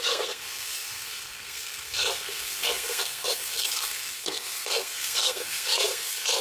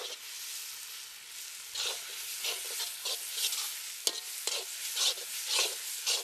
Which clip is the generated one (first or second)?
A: first